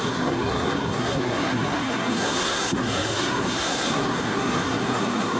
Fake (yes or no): yes